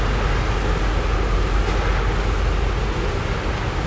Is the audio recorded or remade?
recorded